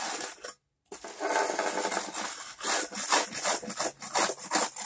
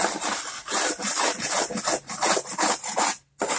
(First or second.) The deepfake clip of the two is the second